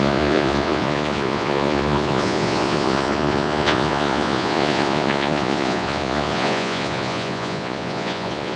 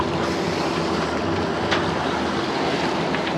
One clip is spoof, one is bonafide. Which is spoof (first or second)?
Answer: first